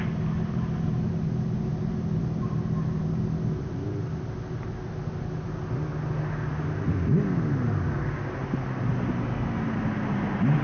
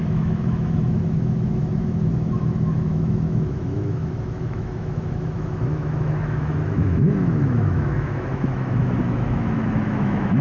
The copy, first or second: second